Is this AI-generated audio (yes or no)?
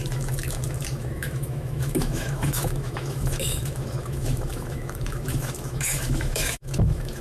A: yes